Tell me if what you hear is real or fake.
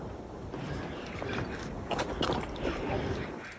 real